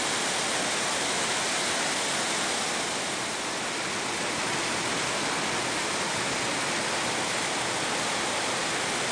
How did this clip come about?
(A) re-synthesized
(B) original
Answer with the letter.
B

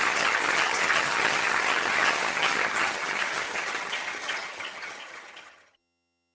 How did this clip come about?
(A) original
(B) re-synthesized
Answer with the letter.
B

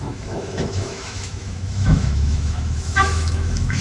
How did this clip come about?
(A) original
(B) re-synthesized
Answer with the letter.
B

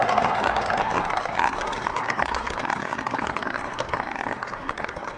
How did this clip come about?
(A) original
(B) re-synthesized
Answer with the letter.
B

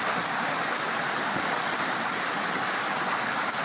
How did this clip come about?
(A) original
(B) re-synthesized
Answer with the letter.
A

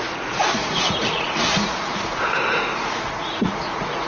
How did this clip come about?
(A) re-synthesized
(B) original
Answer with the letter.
A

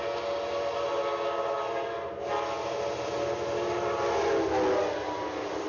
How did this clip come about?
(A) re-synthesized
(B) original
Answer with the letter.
B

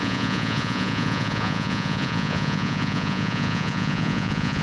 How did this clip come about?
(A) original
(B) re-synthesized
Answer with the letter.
B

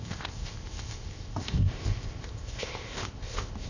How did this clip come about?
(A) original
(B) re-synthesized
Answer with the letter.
B